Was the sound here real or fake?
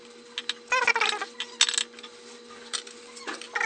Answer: real